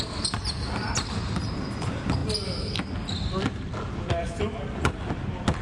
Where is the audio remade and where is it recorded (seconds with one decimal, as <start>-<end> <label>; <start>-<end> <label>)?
0.0-5.6 recorded